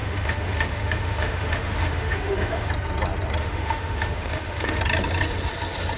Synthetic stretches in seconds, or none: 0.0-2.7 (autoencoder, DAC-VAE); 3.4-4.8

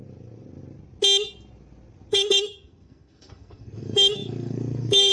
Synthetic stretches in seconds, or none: 2.1-5.1 (codec, SNAC)

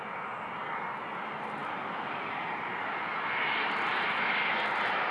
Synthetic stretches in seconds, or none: none

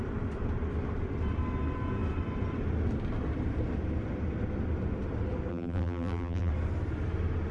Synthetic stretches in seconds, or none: 5.5-6.5 (vocoder, BigVGAN v2)